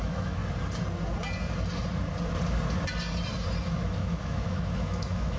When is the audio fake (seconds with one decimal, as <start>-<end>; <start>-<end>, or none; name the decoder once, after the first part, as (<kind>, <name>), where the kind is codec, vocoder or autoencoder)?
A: 0.0-0.4 (autoencoder, DAC-VAE); 3.6-5.4